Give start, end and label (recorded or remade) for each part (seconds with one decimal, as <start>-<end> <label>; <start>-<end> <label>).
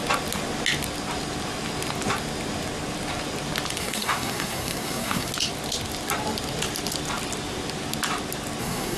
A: 0.0-3.8 recorded; 3.8-5.3 remade; 5.3-8.6 recorded; 8.6-9.0 remade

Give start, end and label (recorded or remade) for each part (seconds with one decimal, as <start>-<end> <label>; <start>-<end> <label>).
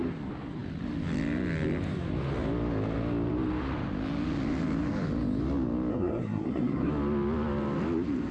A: 0.0-5.9 recorded; 5.9-6.9 remade; 6.9-8.3 recorded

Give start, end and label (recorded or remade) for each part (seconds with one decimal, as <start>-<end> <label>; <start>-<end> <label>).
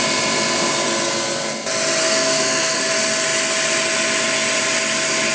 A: 0.0-2.0 recorded; 2.0-2.9 remade; 2.9-5.3 recorded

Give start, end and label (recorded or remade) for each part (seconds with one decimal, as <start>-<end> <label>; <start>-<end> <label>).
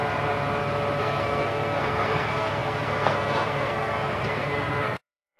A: 0.0-1.0 recorded; 1.0-5.4 remade